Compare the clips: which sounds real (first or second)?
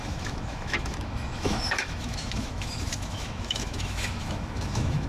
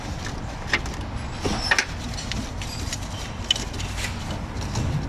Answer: second